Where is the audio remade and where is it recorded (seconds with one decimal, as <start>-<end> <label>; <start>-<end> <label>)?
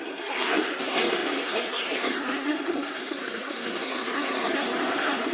0.0-5.3 remade